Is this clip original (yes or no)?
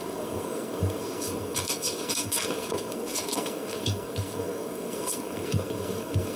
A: no